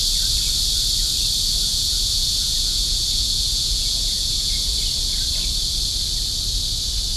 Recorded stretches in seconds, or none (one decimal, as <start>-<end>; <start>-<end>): 0.0-1.7; 4.7-7.2